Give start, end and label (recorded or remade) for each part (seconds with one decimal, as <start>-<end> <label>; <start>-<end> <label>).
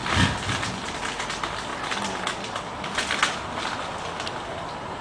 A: 0.0-5.0 recorded